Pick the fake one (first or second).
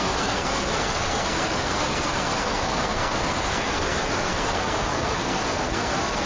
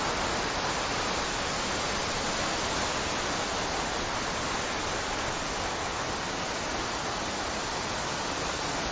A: first